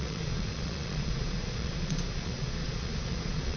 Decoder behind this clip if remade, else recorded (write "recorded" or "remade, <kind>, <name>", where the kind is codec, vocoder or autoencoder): remade, vocoder, Vocos